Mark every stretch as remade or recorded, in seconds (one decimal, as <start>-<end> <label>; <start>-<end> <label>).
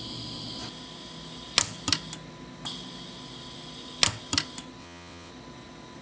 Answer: 0.0-4.8 recorded; 4.8-5.3 remade; 5.3-6.0 recorded